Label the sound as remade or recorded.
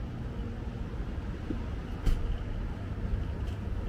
recorded